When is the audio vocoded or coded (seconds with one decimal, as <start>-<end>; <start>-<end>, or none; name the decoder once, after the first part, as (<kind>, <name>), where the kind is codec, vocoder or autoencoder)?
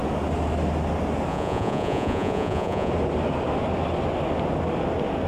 1.3-2.9 (vocoder, Vocos)